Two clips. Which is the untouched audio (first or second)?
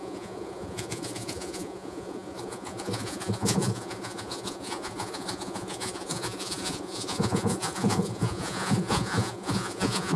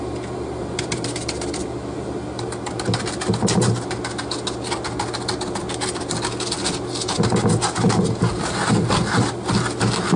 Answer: second